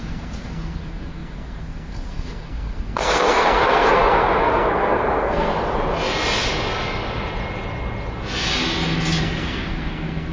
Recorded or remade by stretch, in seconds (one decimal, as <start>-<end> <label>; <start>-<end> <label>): 0.0-5.5 remade; 5.5-9.2 recorded; 9.2-10.3 remade